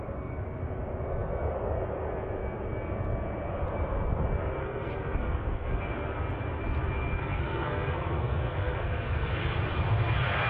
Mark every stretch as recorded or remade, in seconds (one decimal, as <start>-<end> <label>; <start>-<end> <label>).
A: 0.0-4.6 recorded; 4.6-5.8 remade; 5.8-7.2 recorded; 7.2-9.4 remade; 9.4-10.5 recorded